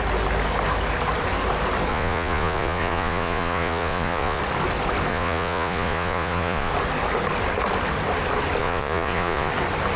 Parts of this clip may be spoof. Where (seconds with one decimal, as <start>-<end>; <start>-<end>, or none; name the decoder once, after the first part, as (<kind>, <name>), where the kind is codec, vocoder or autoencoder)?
1.9-4.4 (vocoder, Vocos); 5.1-6.7; 8.6-9.5